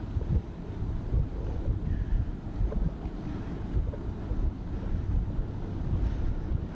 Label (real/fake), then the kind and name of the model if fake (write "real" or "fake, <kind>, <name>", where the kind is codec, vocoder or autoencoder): real